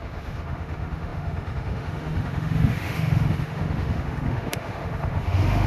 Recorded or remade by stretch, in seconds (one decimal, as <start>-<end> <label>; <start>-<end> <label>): 0.0-5.7 remade